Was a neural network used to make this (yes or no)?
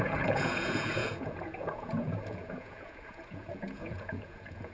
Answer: yes